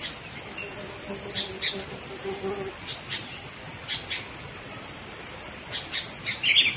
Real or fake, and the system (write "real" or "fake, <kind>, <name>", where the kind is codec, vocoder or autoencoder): real